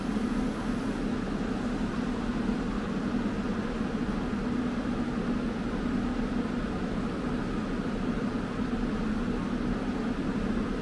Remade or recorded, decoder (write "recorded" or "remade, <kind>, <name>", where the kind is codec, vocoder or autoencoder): recorded